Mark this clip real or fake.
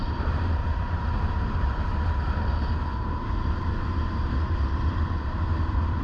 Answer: fake